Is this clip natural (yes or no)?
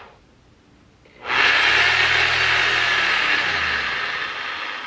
yes